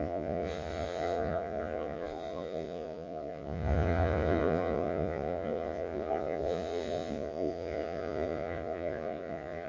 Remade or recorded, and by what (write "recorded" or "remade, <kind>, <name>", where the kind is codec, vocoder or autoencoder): remade, vocoder, Vocos